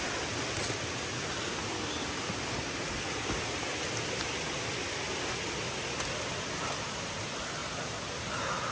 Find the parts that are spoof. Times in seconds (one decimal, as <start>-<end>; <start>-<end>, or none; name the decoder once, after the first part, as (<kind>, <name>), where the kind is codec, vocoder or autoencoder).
none